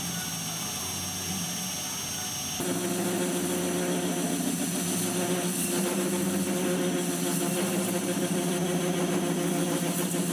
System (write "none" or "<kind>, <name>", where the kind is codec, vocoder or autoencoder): none